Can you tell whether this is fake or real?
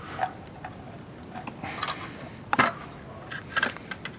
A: real